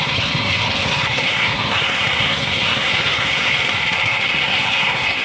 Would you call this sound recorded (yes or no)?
no